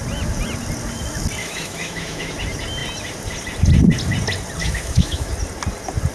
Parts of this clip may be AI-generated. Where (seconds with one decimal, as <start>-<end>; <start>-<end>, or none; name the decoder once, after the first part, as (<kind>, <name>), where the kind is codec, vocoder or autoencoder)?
1.4-2.3 (autoencoder, DAC-VAE); 4.6-5.3